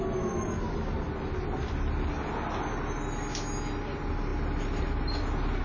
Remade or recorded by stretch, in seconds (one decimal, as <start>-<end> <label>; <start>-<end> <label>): 0.0-5.6 recorded